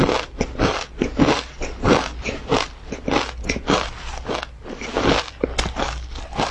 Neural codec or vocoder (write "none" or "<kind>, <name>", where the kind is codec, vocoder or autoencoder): none